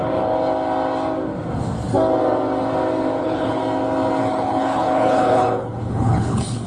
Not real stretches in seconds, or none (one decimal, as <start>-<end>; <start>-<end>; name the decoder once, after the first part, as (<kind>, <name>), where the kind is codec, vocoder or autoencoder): 3.2-3.6 (codec, HILCodec); 4.2-6.7